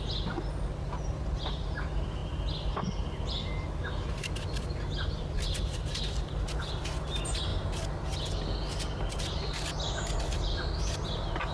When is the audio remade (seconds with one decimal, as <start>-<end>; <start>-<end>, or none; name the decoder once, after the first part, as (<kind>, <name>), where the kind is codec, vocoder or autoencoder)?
none